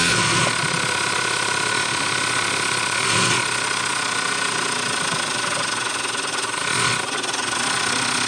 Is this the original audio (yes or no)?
no